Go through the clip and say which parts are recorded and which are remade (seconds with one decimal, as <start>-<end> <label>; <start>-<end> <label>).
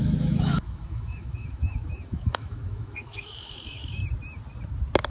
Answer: 0.0-4.0 remade; 4.0-5.1 recorded